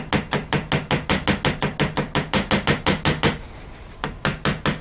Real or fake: real